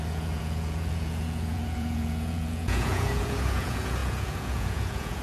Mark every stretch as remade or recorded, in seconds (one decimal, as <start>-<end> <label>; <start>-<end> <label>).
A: 0.0-5.2 remade